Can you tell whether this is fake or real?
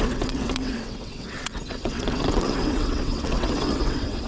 fake